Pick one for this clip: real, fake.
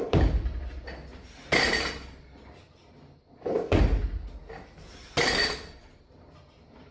real